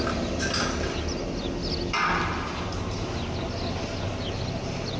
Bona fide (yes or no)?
yes